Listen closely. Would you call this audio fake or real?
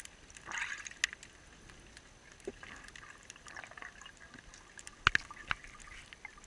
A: real